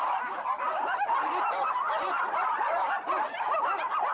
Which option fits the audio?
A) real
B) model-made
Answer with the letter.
A